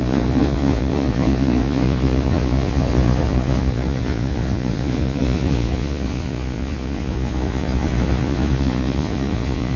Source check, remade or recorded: remade